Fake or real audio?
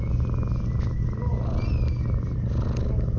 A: real